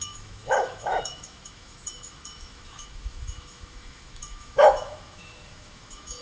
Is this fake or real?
fake